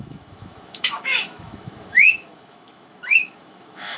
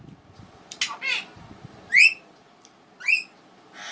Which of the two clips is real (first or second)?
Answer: second